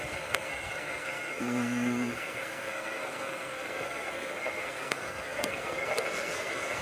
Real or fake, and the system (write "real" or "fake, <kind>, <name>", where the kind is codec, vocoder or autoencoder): fake, codec, SNAC